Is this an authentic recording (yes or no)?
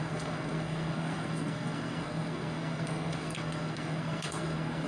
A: no